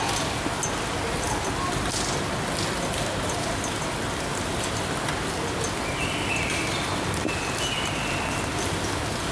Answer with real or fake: real